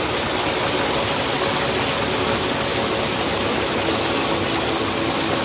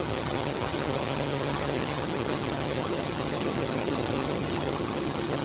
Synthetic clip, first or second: second